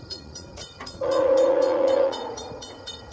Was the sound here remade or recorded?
remade